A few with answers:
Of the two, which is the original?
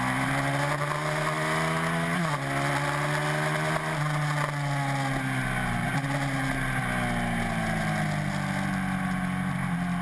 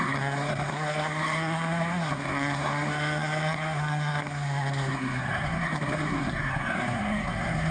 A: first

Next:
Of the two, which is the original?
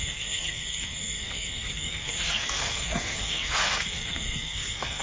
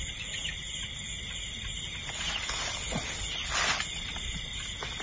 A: second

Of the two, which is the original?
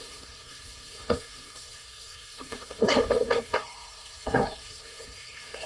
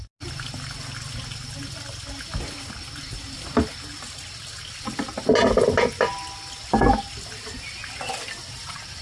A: second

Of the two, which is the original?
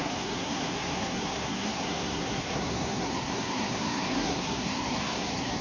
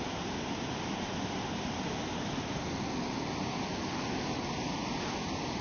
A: second